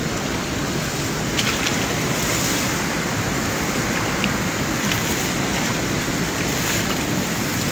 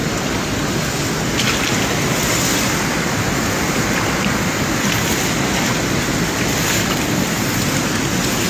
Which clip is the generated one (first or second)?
first